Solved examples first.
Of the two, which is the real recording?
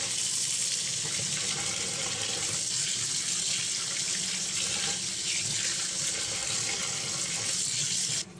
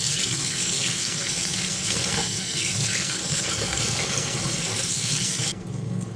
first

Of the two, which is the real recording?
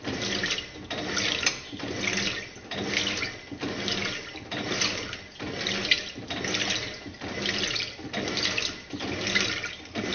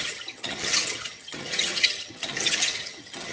first